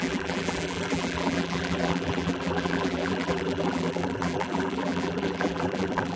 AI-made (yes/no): yes